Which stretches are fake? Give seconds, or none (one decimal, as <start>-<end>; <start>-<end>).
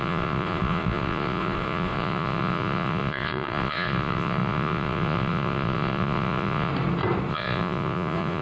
0.0-6.7; 7.3-8.4